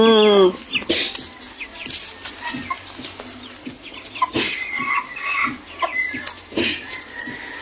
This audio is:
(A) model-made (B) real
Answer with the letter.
B